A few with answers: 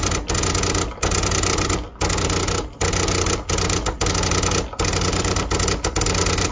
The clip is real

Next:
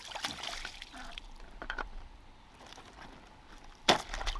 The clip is fake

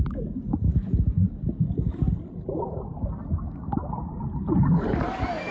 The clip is fake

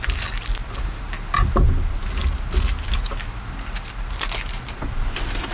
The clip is real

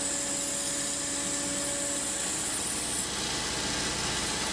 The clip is real